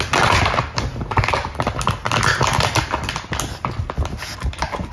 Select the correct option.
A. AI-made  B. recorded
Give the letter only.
B